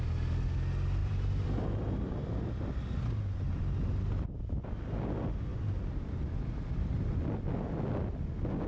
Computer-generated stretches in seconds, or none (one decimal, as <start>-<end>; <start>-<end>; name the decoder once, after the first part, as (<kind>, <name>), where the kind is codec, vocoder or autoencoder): 1.0-3.0 (vocoder, BigVGAN v2)

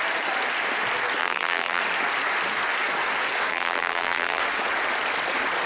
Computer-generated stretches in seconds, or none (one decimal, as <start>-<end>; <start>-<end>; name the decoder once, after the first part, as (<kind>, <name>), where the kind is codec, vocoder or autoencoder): 1.2-1.8 (vocoder, BigVGAN v2); 3.5-4.4

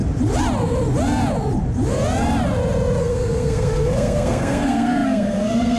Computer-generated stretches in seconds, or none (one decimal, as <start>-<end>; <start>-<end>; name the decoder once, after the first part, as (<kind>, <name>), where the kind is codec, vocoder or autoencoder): 3.0-5.8 (codec, SNAC)